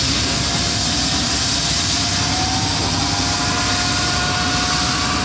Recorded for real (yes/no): yes